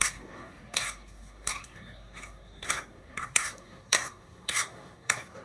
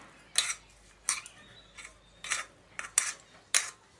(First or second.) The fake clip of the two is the first